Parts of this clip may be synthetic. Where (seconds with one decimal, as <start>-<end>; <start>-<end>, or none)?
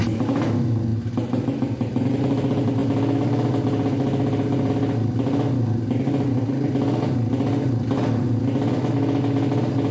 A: none